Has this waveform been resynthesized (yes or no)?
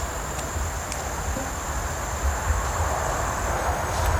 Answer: no